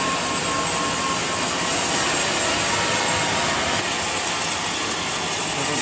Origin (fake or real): real